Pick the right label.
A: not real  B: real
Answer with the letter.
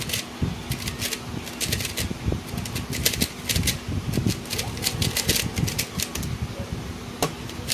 B